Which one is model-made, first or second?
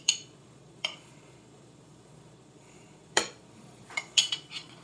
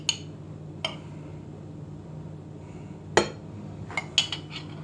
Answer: first